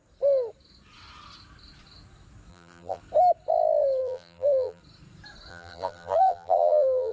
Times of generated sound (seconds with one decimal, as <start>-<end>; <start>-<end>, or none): 2.5-3.0; 4.0-4.8; 5.5-7.1